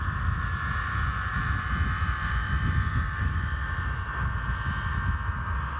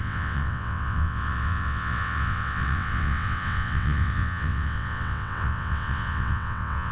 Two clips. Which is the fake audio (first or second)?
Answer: second